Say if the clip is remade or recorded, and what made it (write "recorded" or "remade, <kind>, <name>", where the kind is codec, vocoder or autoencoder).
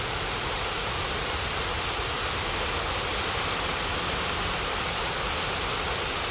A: recorded